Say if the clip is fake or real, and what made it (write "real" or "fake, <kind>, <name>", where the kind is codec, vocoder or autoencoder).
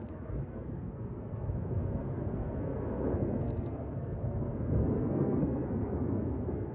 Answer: fake, codec, SNAC